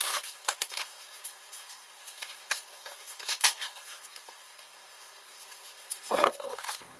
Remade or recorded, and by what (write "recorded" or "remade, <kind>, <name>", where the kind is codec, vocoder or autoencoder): remade, codec, SNAC